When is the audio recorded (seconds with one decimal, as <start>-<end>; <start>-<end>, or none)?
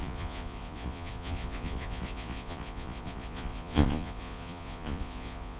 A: none